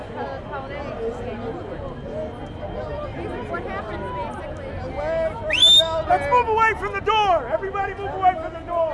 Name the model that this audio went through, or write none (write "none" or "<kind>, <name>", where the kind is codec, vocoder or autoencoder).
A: none